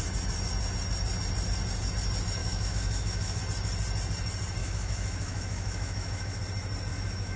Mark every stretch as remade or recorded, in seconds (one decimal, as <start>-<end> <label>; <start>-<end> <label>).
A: 0.0-2.4 recorded; 2.4-3.4 remade; 3.4-4.6 recorded; 4.6-6.4 remade; 6.4-6.9 recorded; 6.9-7.4 remade

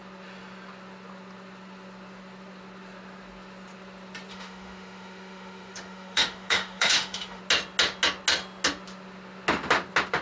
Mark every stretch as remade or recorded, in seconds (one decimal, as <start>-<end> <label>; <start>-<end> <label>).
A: 0.0-4.3 recorded; 4.3-7.4 remade; 7.4-10.2 recorded

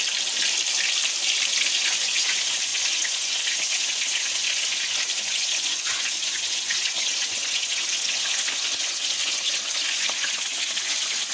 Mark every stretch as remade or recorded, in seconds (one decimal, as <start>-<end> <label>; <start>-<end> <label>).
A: 0.0-1.7 recorded; 1.7-11.3 remade

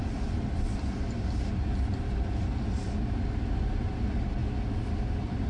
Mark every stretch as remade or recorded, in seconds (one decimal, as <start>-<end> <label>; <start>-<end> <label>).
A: 0.0-5.5 recorded